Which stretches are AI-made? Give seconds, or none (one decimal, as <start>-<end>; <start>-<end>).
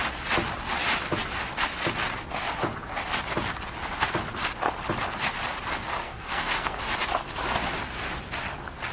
6.0-6.8